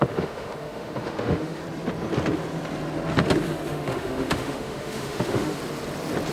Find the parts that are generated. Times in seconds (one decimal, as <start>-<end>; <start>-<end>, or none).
0.0-1.6; 3.7-5.6

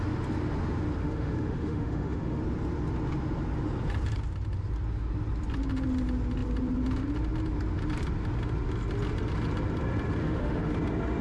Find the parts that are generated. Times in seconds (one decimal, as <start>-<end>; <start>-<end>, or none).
1.0-2.4; 10.2-10.7

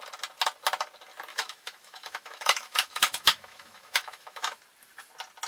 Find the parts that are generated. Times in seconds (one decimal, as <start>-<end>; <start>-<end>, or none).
1.3-4.6

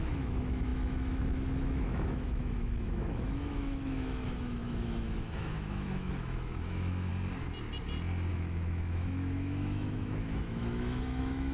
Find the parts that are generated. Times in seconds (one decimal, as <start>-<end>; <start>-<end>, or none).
0.0-7.1; 8.3-11.5

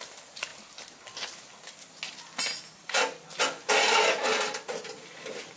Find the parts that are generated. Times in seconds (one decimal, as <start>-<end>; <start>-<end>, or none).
none

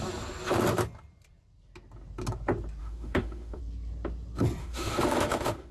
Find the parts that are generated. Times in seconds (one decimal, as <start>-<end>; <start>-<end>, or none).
2.8-3.6; 4.6-5.7

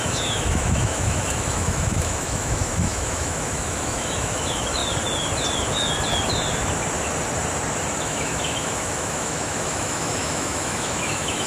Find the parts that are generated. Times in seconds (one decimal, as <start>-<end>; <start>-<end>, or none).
0.0-4.8; 8.0-11.5